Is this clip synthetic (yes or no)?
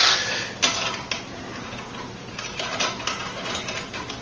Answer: no